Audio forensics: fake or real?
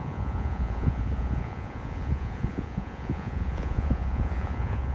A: fake